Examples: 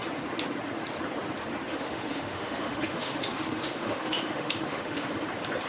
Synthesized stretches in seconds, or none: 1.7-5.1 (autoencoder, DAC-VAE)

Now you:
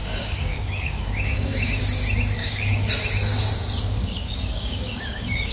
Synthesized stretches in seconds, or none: 0.0-1.8 (codec, DAC); 2.4-2.9; 4.0-5.5

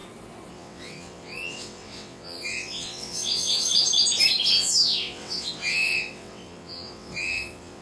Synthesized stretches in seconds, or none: 0.5-3.7 (vocoder, WaveNeXt); 4.5-7.8

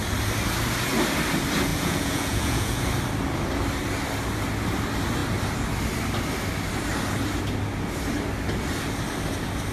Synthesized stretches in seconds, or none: 1.7-2.8 (vocoder, Vocos)

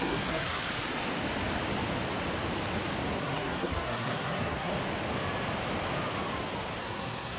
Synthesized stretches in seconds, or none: 0.0-0.6 (codec, SNAC); 3.2-4.7; 6.8-7.4

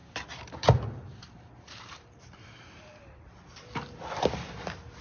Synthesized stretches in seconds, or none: 0.0-3.0 (vocoder, BigVGAN v2)

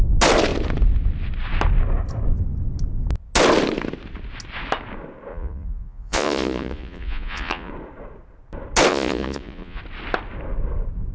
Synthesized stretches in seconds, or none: 5.3-7.7 (vocoder, Vocos); 8.9-9.8

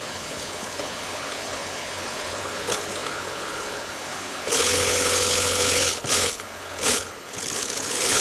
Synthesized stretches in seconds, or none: 0.0-8.2 (codec, HILCodec)